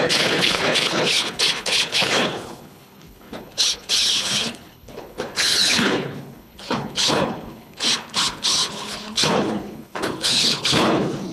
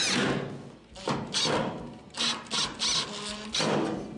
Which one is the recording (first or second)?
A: second